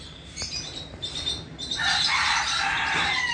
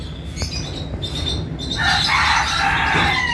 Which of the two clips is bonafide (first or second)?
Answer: second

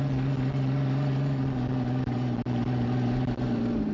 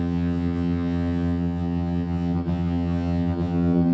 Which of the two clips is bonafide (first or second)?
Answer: first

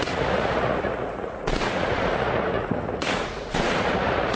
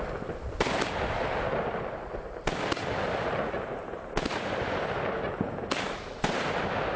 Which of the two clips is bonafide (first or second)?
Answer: second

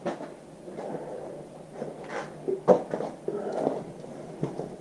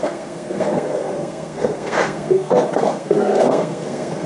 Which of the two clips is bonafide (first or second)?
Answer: first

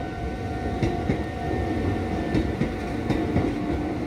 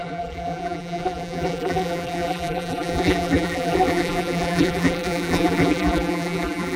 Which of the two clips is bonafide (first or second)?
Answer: first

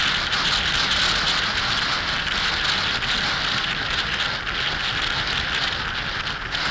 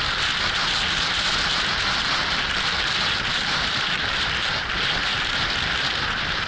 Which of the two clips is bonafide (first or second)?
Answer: first